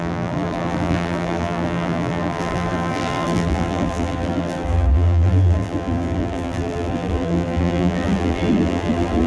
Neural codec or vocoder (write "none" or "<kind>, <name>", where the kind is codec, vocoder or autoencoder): vocoder, BigVGAN v2